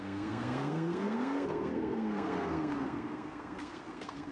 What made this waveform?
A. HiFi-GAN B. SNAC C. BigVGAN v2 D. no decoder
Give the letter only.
B